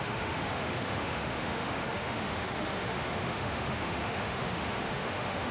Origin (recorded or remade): remade